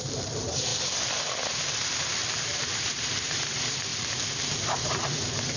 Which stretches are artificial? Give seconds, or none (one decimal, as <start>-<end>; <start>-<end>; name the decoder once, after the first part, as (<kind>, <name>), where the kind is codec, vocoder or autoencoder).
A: 0.0-0.7 (vocoder, BigVGAN v2); 1.5-5.6